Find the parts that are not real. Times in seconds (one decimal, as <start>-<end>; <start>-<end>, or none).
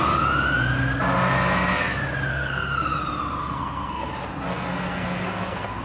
2.3-2.8; 3.4-4.1; 4.7-5.8